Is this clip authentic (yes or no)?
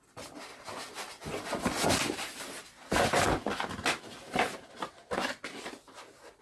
yes